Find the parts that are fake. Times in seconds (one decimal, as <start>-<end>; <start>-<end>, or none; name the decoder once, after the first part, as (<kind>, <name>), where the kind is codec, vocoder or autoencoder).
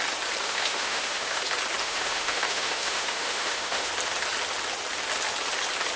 0.4-1.4 (autoencoder, DAC-VAE); 1.8-3.9